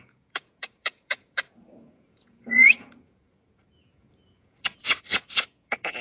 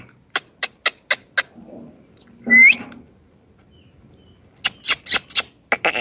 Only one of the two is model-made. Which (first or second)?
first